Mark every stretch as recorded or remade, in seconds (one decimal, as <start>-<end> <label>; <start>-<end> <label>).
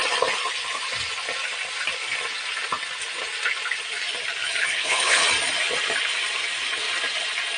0.0-4.6 recorded; 4.6-5.2 remade; 5.2-7.6 recorded